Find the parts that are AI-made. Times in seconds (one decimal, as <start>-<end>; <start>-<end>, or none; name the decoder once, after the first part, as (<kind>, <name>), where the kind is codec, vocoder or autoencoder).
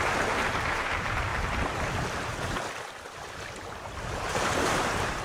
0.0-1.3 (vocoder, BigVGAN v2); 4.4-5.2